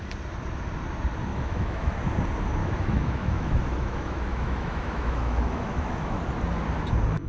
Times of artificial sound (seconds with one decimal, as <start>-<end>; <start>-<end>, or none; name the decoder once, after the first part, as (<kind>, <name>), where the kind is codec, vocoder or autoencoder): 1.3-1.9 (autoencoder, DAC-VAE); 2.6-6.2